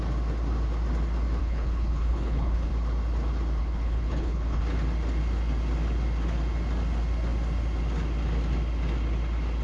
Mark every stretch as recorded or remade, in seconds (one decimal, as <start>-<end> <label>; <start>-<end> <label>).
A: 0.0-1.4 recorded; 1.4-2.7 remade; 2.7-3.6 recorded; 3.6-4.6 remade; 4.6-9.6 recorded